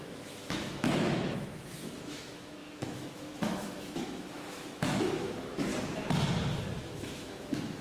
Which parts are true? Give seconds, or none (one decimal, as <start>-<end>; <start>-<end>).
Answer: 5.7-6.8